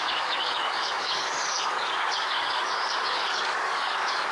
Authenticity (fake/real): fake